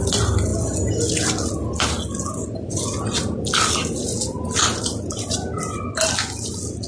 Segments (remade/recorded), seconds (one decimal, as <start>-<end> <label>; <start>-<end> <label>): 0.0-6.9 recorded